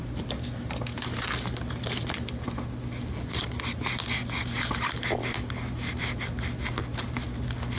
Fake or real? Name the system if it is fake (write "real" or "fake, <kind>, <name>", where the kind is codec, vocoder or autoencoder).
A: real